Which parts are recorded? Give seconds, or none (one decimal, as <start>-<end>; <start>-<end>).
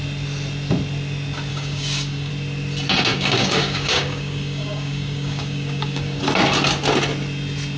0.0-1.5; 2.3-3.1; 6.2-7.8